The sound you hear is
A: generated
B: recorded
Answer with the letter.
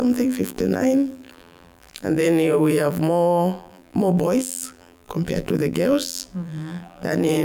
A